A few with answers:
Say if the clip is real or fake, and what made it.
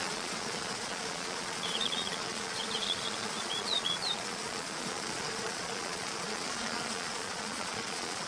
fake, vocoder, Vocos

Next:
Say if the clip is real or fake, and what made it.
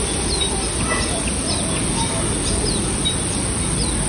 real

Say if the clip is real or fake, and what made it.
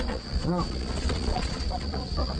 fake, vocoder, Vocos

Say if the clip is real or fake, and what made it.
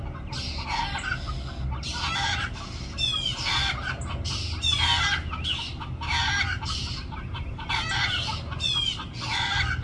real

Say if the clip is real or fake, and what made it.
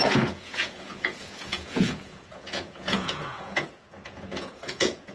fake, vocoder, Vocos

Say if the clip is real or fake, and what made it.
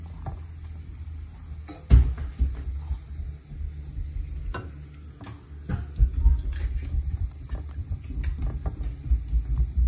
real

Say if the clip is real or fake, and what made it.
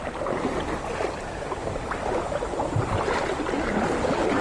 real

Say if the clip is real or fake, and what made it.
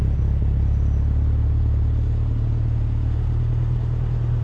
real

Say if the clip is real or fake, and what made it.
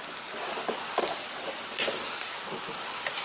real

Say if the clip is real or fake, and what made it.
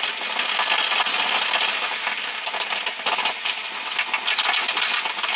real